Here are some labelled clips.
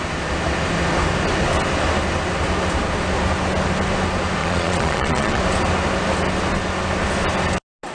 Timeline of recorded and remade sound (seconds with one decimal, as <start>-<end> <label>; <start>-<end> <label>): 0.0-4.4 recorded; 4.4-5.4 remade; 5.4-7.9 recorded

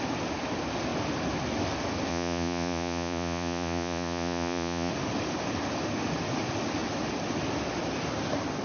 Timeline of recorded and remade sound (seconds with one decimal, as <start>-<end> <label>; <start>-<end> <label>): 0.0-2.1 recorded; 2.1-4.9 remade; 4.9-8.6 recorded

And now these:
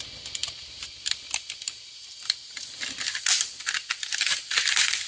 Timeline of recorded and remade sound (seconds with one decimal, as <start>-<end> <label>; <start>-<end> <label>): 0.0-5.1 recorded